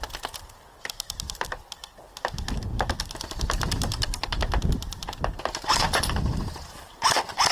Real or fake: real